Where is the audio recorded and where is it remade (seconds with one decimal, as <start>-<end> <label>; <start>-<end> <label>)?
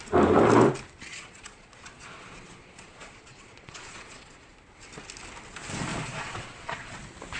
0.0-1.1 recorded; 1.1-4.5 remade; 4.5-5.9 recorded; 5.9-7.0 remade; 7.0-7.4 recorded